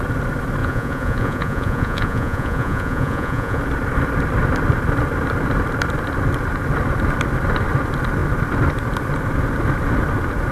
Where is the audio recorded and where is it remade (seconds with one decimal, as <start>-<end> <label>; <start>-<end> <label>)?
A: 0.0-0.6 recorded; 0.6-3.6 remade; 3.6-10.5 recorded